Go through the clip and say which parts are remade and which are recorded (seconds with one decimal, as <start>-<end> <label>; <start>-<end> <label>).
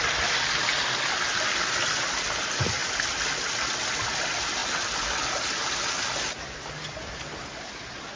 0.0-8.2 recorded